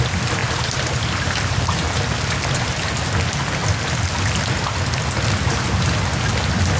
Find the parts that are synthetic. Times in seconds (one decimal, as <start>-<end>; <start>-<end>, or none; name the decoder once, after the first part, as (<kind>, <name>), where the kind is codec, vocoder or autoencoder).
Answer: 0.4-1.9 (vocoder, BigVGAN v2)